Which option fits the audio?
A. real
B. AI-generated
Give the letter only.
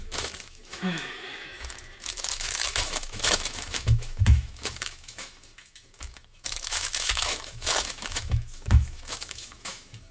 B